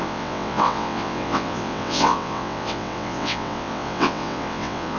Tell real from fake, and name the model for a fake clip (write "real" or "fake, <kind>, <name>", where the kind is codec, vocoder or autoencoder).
fake, vocoder, WaveNeXt